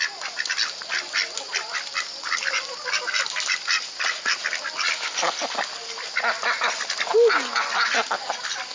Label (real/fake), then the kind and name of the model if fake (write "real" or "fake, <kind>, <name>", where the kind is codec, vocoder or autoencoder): real